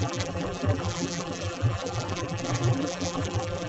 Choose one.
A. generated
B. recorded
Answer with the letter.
A